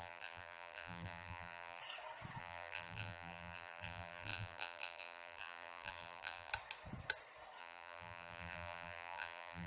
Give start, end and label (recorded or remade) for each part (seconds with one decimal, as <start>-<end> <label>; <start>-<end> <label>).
0.0-1.8 remade; 1.8-2.4 recorded; 2.4-6.5 remade; 6.5-7.6 recorded; 7.6-9.7 remade